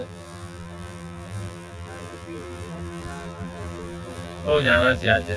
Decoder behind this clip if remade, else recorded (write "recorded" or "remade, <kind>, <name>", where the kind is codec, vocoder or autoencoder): remade, vocoder, BigVGAN v2